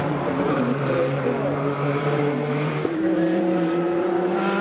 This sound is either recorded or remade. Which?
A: remade